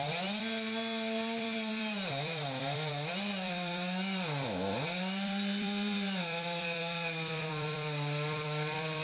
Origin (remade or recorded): remade